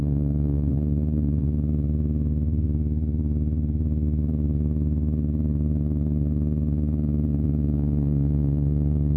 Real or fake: fake